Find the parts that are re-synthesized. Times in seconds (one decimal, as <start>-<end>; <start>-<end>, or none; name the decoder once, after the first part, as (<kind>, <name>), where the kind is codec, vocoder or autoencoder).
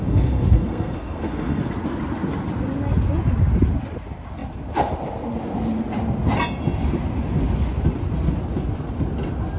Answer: 0.0-1.6 (codec, SNAC)